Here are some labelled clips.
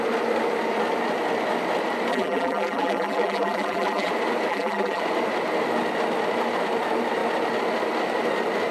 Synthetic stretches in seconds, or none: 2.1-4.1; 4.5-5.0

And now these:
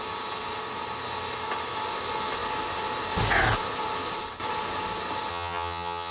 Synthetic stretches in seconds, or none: 5.3-6.1

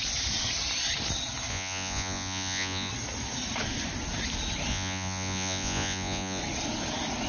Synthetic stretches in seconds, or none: 1.5-2.9; 4.7-6.4

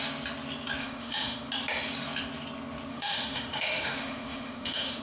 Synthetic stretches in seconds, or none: 0.8-1.5; 2.9-5.0

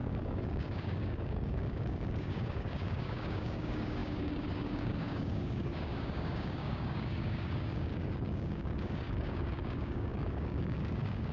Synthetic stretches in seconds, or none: 0.0-11.3

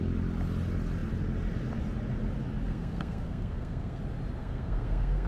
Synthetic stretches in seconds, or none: 2.7-4.0; 4.4-5.3

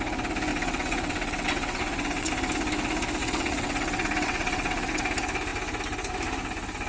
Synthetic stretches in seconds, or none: 0.5-2.3; 3.2-5.0

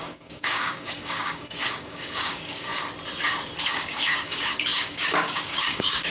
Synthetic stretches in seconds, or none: 0.0-2.7; 3.6-6.1